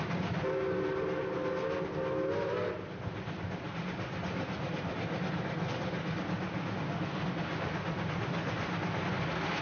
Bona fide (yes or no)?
yes